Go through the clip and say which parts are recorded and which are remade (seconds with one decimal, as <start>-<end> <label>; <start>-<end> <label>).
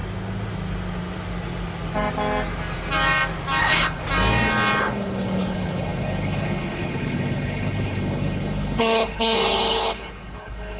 0.0-3.6 recorded; 3.6-4.0 remade; 4.0-4.8 recorded; 4.8-10.8 remade